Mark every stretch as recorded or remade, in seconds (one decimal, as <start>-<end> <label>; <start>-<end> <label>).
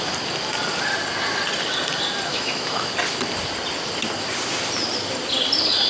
0.0-2.3 recorded; 2.3-2.9 remade; 2.9-5.9 recorded